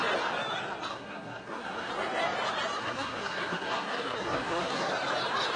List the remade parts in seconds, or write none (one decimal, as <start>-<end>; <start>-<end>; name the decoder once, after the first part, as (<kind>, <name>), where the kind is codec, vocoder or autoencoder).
0.9-1.9 (codec, SNAC); 2.8-4.9